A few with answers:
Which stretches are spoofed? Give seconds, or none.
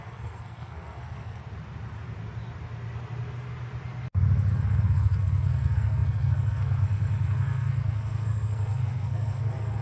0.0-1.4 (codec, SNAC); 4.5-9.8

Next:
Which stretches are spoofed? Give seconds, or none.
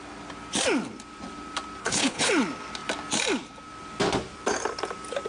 1.8-2.3 (codec, HILCodec)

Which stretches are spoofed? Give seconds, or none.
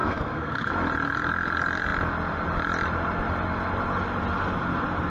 0.0-0.7 (codec, SNAC)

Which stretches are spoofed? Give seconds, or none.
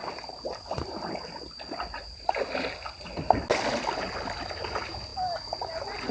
none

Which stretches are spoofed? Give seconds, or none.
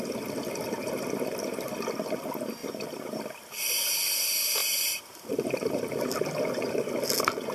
4.6-5.8 (vocoder, BigVGAN v2)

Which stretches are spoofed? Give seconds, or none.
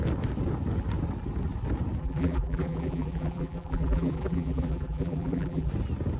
2.0-5.7 (vocoder, BigVGAN v2)